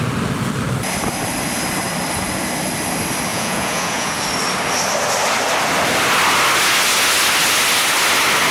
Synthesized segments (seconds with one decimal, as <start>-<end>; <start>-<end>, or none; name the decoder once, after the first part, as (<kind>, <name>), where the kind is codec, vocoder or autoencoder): 3.3-4.2 (vocoder, Vocos)